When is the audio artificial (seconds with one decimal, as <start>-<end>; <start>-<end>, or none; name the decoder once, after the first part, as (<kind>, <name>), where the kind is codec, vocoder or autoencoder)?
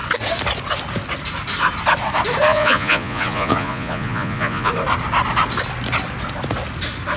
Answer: 2.5-4.7 (vocoder, Vocos)